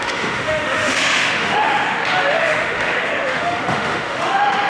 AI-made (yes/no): yes